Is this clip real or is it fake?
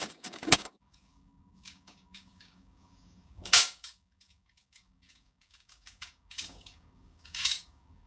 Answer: fake